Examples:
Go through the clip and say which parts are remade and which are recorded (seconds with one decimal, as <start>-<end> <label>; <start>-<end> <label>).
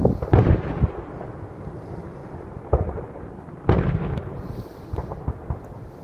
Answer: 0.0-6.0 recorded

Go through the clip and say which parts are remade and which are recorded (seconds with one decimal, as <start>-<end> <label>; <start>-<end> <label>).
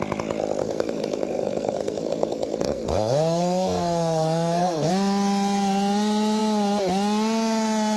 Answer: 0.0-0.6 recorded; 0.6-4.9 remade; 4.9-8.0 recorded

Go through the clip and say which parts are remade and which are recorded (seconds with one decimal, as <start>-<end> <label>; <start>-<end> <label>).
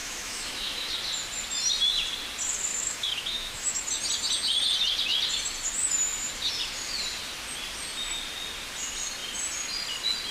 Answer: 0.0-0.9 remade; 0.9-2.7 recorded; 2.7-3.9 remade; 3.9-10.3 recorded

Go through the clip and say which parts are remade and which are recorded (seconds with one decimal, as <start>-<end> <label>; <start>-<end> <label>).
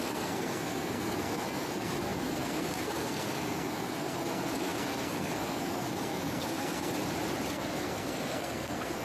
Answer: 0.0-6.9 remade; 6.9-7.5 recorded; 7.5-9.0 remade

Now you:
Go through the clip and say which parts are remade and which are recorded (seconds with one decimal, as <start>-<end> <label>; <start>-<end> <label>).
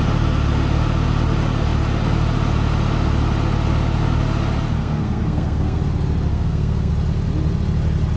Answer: 0.0-4.8 recorded; 4.8-5.8 remade; 5.8-6.3 recorded; 6.3-6.9 remade; 6.9-8.2 recorded